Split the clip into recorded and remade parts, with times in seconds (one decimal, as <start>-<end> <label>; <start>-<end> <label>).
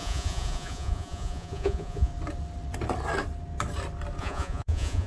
0.0-2.1 remade; 2.1-4.2 recorded; 4.2-5.1 remade